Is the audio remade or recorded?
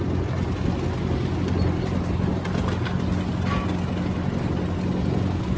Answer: recorded